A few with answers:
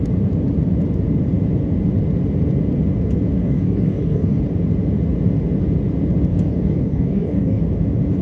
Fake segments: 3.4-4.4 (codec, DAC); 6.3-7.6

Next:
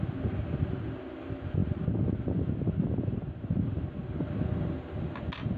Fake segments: none